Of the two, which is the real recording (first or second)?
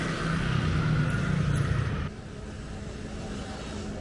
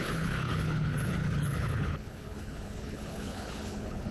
first